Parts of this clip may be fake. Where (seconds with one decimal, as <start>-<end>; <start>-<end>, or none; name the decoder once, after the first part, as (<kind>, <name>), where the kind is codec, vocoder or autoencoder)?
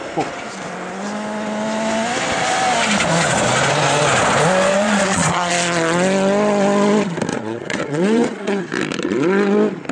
4.7-5.5 (vocoder, Vocos); 7.3-8.6